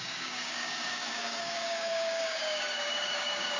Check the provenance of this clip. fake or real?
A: fake